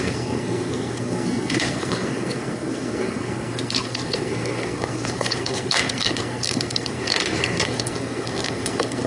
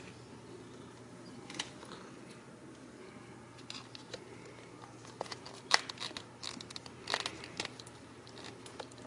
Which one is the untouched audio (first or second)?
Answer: second